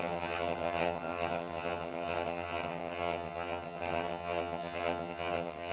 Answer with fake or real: fake